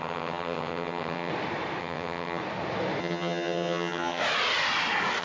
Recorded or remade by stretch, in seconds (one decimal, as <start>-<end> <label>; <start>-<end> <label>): 0.0-1.3 remade; 1.3-1.8 recorded; 1.8-2.4 remade; 2.4-3.0 recorded; 3.0-4.2 remade; 4.2-5.2 recorded